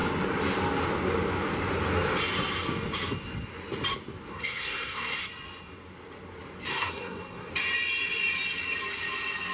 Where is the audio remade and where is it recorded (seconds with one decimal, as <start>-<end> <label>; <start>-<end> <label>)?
0.0-4.3 recorded; 4.3-5.2 remade; 5.2-6.7 recorded; 6.7-7.5 remade; 7.5-9.5 recorded